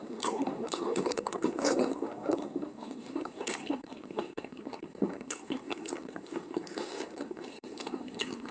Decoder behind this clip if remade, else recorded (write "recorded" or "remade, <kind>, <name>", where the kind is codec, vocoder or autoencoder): remade, codec, SNAC